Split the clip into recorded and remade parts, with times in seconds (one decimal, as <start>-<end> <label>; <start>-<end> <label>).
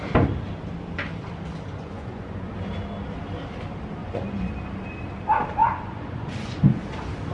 0.0-1.8 recorded; 1.8-2.5 remade; 2.5-4.0 recorded; 4.0-4.5 remade; 4.5-5.6 recorded; 5.6-6.8 remade; 6.8-7.3 recorded